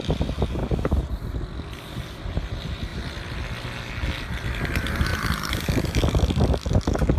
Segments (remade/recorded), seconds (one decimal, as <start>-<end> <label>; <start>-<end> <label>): 0.0-5.1 recorded; 5.1-6.0 remade; 6.0-7.2 recorded